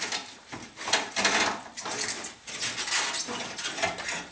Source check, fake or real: real